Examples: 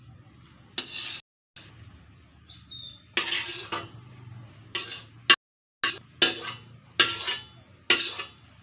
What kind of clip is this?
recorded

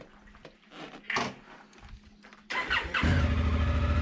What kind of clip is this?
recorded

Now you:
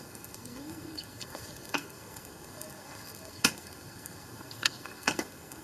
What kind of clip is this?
remade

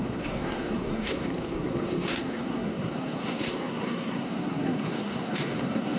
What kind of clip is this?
remade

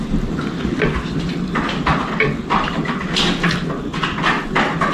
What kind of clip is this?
recorded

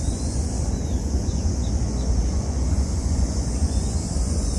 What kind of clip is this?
remade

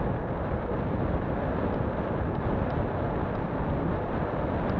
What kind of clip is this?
recorded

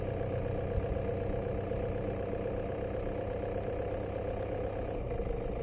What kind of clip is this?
recorded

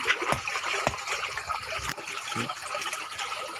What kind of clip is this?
recorded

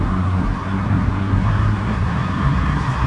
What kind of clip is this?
remade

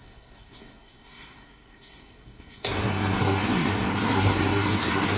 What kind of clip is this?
remade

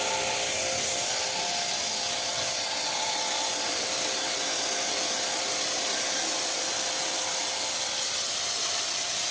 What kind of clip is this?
recorded